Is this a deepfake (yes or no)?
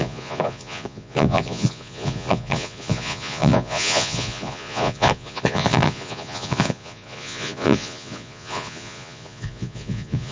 yes